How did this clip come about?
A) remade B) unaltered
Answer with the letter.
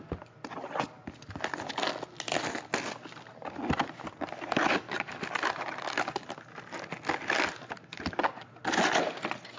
B